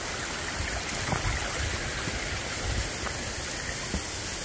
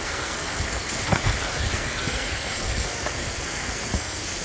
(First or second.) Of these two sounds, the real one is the first